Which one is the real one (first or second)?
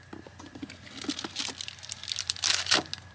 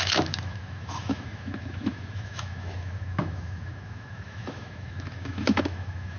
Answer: first